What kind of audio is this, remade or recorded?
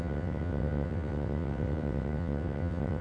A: remade